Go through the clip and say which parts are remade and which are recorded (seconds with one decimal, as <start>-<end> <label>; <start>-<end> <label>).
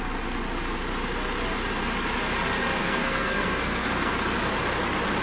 0.0-2.8 recorded; 2.8-4.1 remade; 4.1-5.2 recorded